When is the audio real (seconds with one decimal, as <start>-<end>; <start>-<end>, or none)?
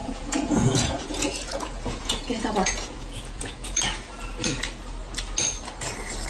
3.8-6.3